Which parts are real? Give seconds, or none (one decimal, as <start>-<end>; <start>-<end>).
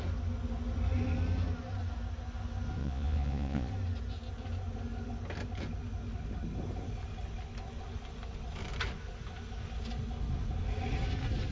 0.0-2.8; 3.7-11.5